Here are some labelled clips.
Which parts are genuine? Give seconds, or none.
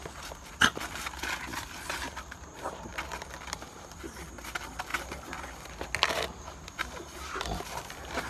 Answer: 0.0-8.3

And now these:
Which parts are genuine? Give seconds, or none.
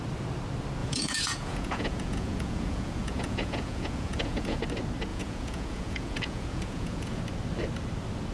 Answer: 0.0-0.8; 4.6-5.1; 7.2-8.3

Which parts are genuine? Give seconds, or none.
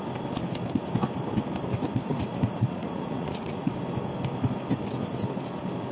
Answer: 0.0-2.0; 3.7-5.9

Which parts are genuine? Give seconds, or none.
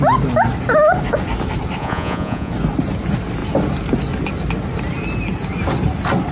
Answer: 0.0-1.8; 2.5-6.3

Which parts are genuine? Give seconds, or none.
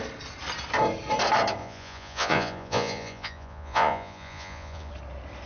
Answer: 0.0-1.6; 4.9-5.5